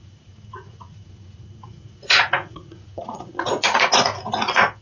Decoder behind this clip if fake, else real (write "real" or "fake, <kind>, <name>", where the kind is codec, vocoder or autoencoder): fake, vocoder, Vocos